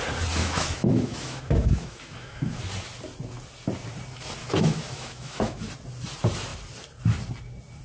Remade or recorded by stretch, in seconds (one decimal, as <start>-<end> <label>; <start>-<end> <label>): 0.0-0.4 recorded; 0.4-2.6 remade; 2.6-4.4 recorded; 4.4-5.7 remade; 5.7-7.8 recorded